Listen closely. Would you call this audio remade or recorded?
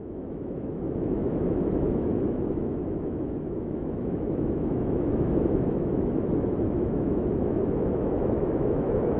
remade